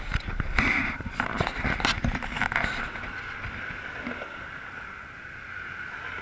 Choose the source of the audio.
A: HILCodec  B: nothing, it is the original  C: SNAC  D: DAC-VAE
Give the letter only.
B